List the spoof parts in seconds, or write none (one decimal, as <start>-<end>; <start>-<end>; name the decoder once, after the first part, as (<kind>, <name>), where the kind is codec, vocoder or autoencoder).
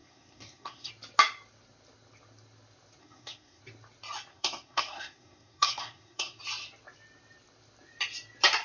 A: 0.0-0.9 (codec, SNAC); 3.0-3.6; 4.3-6.4